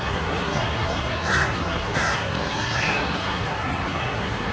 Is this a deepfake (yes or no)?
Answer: yes